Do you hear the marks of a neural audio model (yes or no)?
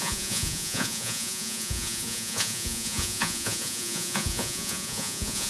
yes